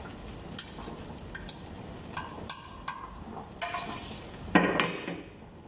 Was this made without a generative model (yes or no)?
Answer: yes